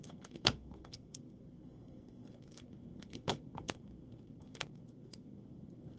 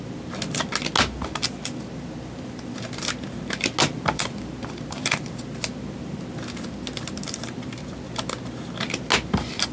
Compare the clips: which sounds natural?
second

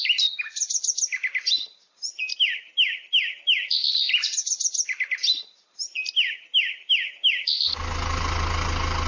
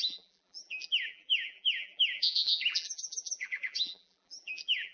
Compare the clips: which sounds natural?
first